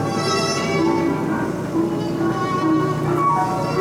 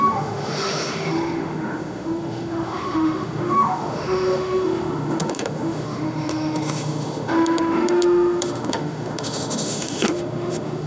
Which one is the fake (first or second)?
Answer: second